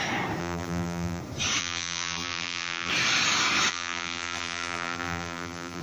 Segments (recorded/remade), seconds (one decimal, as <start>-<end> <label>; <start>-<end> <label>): 0.0-0.4 recorded; 0.4-1.2 remade; 1.2-1.6 recorded; 1.6-2.9 remade; 2.9-3.7 recorded; 3.7-5.8 remade